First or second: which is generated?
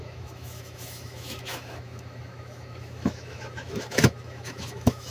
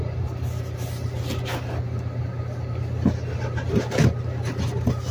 first